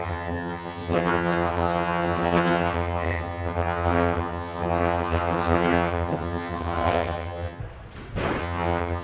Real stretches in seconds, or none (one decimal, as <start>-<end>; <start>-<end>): 7.6-8.4